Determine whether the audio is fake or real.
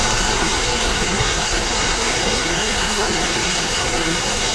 fake